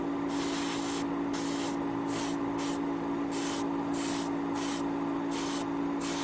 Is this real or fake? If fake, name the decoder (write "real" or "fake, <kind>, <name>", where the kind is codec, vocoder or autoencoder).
real